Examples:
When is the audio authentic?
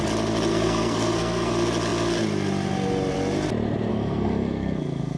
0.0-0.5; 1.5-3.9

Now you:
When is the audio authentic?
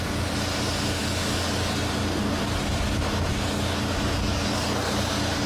0.0-5.5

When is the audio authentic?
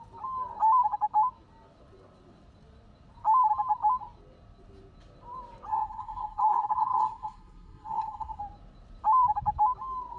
0.0-5.7; 8.4-10.2